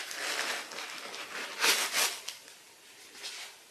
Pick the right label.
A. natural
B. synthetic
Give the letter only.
A